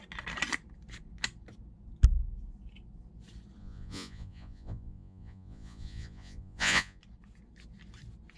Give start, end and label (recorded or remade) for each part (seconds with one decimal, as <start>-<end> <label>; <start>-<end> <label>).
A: 0.0-3.6 recorded; 3.6-7.0 remade; 7.0-8.4 recorded